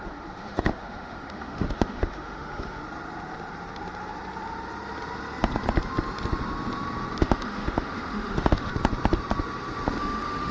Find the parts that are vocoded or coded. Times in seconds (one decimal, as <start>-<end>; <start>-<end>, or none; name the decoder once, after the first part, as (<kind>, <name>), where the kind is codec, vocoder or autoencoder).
0.0-2.8 (autoencoder, DAC-VAE); 7.2-8.7; 10.0-10.5